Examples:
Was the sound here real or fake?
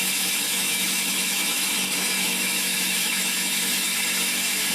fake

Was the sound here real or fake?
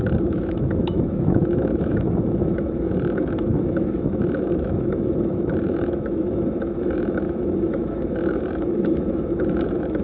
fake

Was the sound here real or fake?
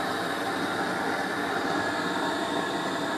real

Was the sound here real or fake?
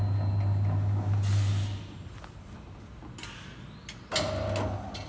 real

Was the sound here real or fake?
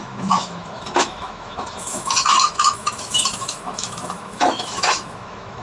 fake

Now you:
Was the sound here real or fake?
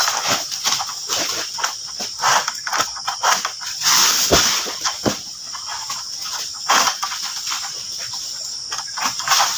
real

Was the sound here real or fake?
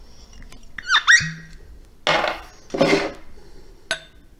real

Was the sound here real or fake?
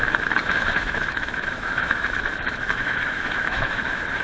fake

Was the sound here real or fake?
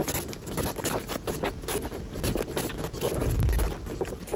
real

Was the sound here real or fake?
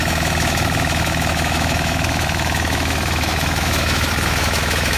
fake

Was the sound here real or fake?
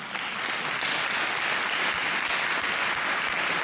real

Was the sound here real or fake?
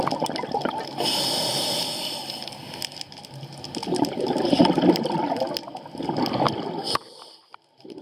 real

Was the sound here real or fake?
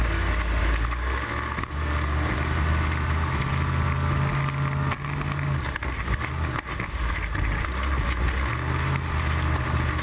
real